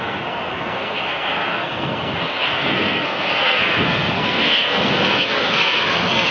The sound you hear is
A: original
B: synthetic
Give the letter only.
B